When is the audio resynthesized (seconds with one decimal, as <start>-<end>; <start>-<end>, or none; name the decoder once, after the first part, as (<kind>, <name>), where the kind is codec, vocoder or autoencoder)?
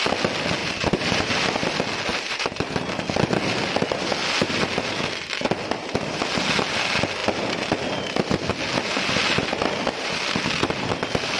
0.6-1.3 (vocoder, BigVGAN v2); 2.1-2.9